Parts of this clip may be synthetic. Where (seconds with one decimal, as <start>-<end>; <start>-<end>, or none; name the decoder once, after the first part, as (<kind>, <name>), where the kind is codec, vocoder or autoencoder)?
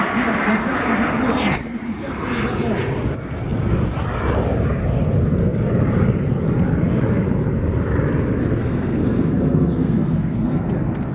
8.6-10.7 (codec, SNAC)